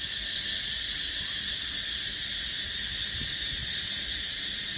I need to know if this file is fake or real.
real